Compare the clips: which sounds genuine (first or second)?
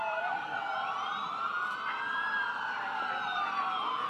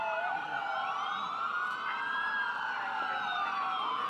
second